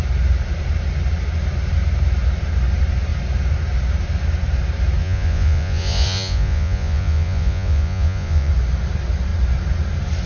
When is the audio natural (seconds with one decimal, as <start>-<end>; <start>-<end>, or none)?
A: 0.0-5.0; 8.5-10.3